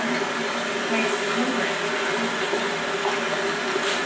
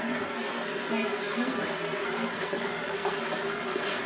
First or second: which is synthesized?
second